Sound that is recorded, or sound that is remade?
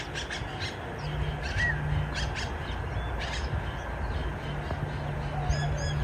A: recorded